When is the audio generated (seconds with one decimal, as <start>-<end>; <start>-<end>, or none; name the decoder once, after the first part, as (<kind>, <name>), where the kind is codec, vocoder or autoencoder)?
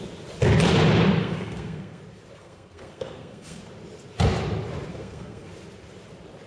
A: 1.2-2.0 (codec, SNAC); 2.4-3.6; 4.9-5.5